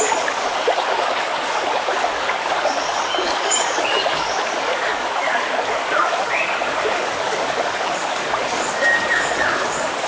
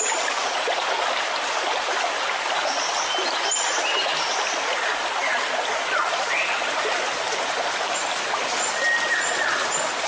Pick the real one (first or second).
second